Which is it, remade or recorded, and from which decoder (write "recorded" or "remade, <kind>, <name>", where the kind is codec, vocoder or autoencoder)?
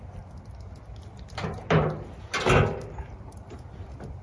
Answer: recorded